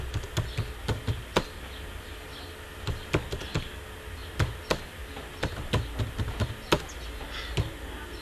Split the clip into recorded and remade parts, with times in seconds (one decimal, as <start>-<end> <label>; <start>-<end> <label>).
0.0-8.2 recorded